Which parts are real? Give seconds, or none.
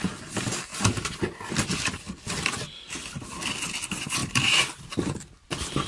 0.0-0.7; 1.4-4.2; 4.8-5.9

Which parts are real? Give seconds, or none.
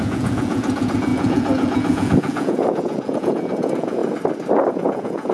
4.0-4.7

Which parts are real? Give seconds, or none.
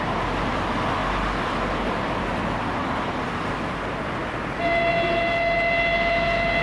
0.0-6.6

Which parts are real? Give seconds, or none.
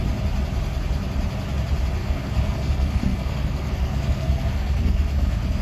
0.0-2.0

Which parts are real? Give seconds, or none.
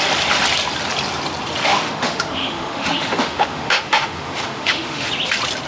0.0-1.7; 5.1-5.7